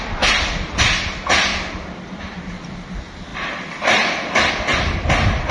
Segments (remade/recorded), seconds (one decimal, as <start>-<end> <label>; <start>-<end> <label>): 0.0-3.3 recorded; 3.3-4.5 remade; 4.5-5.5 recorded